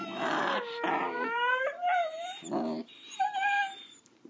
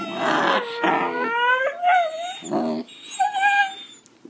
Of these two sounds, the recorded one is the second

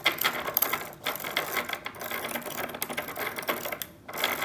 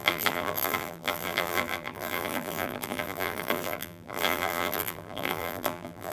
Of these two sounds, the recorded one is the first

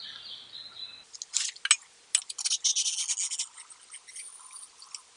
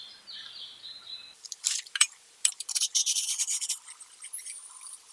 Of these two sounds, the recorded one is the first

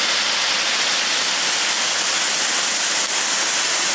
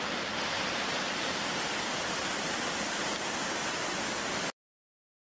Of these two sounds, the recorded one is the first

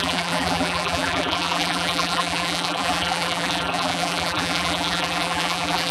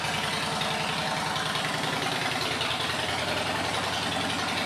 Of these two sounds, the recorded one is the second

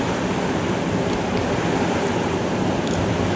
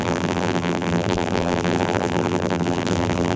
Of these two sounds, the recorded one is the first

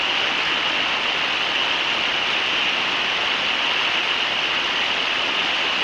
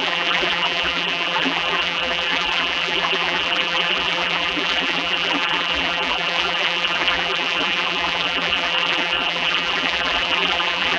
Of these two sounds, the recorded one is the first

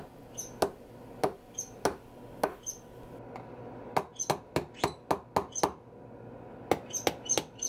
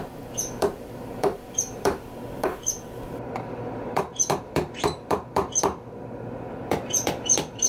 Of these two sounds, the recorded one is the first